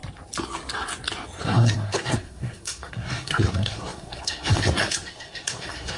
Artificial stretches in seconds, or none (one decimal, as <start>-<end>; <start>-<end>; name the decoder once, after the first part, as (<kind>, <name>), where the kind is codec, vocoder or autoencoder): 1.4-6.0 (codec, SNAC)